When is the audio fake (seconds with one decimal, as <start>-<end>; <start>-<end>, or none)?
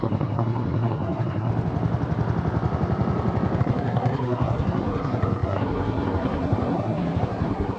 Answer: 0.0-1.5; 3.6-7.8